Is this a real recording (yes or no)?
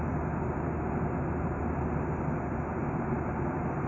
yes